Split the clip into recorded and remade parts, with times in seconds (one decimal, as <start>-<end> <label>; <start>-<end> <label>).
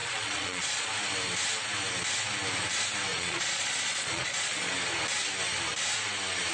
0.0-0.9 remade; 0.9-3.1 recorded; 3.1-4.7 remade; 4.7-6.5 recorded